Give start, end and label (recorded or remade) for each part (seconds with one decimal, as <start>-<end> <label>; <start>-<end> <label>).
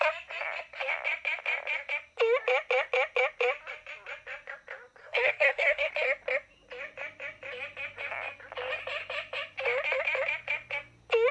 0.0-5.0 recorded; 5.0-5.9 remade; 5.9-11.3 recorded